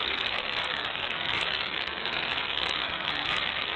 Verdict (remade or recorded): remade